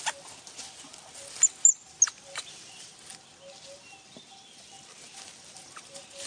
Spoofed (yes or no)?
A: no